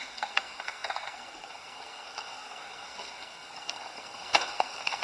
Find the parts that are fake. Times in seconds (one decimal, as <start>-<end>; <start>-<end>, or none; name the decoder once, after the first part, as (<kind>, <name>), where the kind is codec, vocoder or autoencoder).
0.0-5.0 (codec, SNAC)